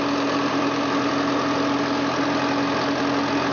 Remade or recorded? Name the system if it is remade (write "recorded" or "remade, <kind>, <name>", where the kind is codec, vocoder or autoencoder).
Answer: recorded